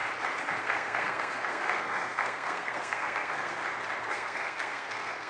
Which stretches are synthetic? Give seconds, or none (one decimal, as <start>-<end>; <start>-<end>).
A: 0.6-3.6; 4.1-5.3